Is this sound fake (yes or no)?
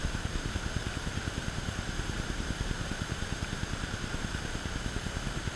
yes